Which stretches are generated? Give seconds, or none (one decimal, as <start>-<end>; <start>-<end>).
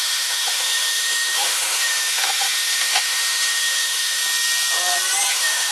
0.0-4.2; 5.3-5.7